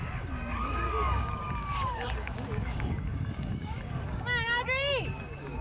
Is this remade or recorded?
remade